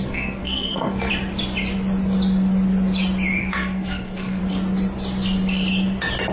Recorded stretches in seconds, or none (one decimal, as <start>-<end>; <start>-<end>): 1.1-3.4; 4.4-6.3